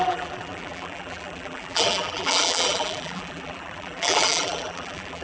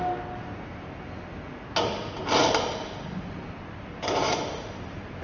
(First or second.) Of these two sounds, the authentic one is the second